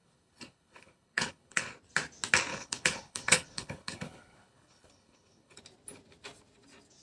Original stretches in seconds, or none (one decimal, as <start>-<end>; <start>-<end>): 1.7-2.5; 5.6-7.0